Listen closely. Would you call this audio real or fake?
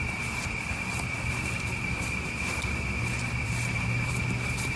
fake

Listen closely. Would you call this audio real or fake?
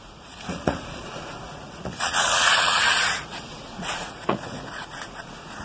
fake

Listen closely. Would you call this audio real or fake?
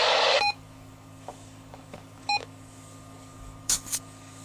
fake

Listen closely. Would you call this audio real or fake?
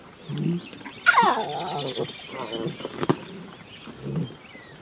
real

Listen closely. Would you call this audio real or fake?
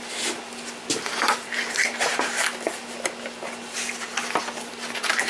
real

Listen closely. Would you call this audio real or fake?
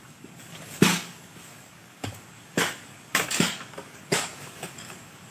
fake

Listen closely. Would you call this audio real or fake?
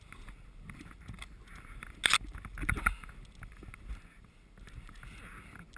real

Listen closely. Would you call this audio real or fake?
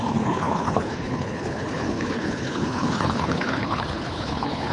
fake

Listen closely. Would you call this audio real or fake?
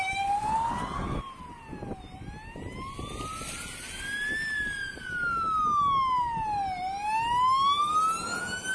real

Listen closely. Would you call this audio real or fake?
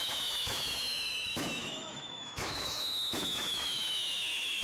fake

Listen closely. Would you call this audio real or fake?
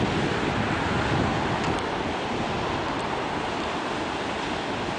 real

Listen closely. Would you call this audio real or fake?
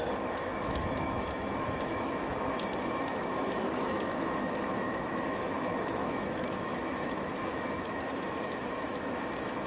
fake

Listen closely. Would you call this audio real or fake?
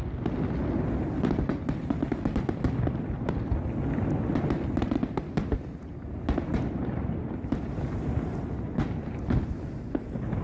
real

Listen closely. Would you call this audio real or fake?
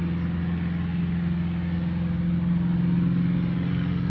real